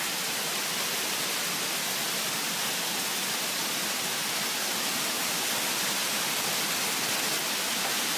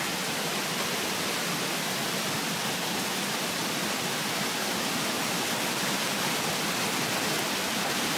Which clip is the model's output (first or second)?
second